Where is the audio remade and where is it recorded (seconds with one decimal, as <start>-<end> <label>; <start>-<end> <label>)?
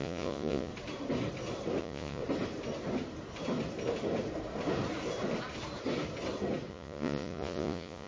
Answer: 0.0-0.7 remade; 0.7-1.8 recorded; 1.8-2.2 remade; 2.2-6.7 recorded; 6.7-8.1 remade